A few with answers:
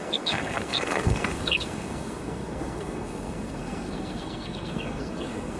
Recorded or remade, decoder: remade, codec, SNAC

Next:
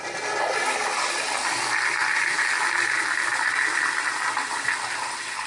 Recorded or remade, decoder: recorded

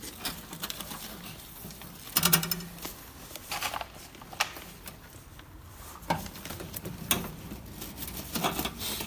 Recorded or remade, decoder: recorded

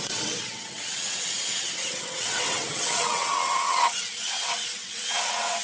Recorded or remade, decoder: remade, vocoder, WaveNeXt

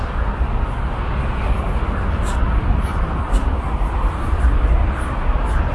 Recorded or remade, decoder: recorded